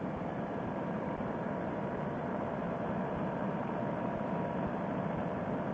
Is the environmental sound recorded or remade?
remade